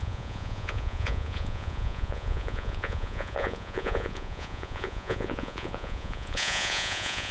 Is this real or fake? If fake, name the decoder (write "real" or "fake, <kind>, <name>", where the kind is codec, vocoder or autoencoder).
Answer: fake, vocoder, Vocos